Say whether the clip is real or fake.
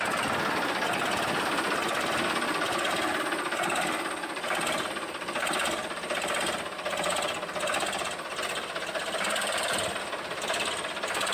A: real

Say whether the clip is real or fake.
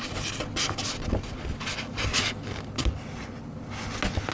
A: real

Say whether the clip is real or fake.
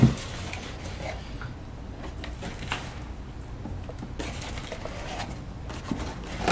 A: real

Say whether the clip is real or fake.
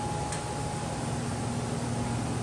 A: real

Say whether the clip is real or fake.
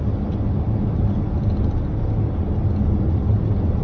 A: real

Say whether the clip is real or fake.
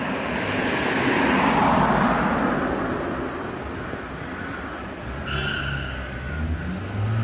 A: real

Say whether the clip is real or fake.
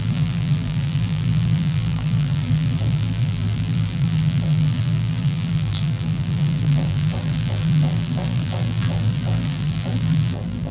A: fake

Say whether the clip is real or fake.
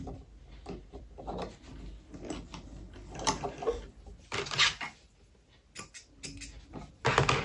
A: real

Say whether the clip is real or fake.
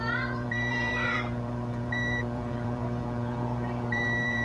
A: fake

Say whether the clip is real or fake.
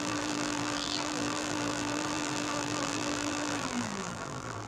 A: fake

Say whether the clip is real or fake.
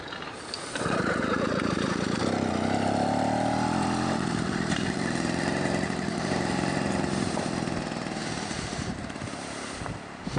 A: fake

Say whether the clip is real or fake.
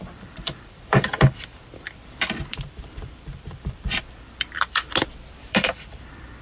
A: fake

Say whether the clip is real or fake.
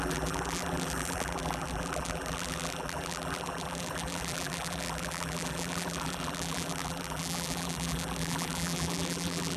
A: fake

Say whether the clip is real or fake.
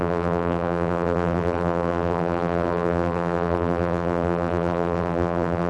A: fake